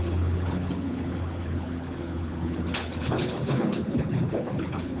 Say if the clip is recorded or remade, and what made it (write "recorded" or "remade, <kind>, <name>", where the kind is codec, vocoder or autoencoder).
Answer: remade, codec, HILCodec